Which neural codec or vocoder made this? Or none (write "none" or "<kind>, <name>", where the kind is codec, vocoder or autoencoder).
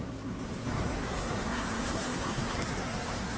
codec, SNAC